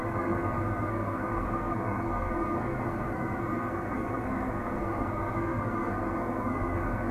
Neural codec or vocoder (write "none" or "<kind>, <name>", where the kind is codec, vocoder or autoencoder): codec, SNAC